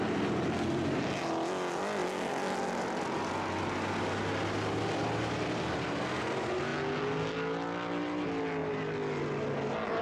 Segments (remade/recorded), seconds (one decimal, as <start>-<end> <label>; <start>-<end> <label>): 0.0-10.0 recorded